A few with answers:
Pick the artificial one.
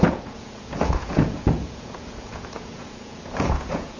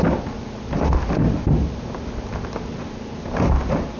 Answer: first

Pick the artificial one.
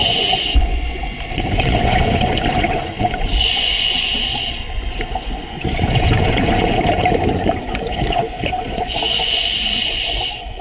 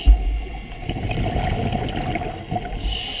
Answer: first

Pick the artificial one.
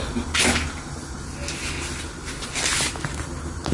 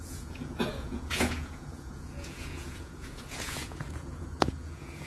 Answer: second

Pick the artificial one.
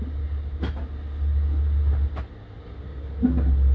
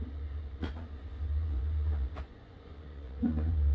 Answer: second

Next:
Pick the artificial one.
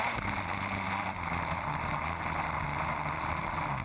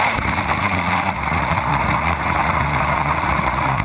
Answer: second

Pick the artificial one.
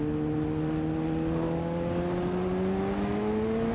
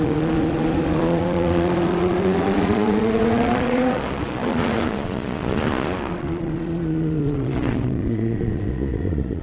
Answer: second